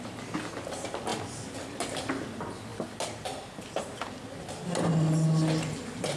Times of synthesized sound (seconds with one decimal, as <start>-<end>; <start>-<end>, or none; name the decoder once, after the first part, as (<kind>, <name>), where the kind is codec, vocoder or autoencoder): none